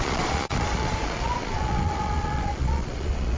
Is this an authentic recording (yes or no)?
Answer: no